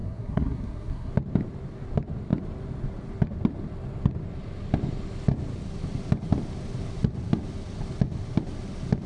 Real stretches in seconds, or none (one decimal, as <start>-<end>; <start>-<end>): 1.1-9.1